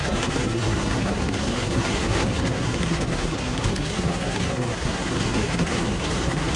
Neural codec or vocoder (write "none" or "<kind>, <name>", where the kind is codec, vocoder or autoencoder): codec, SNAC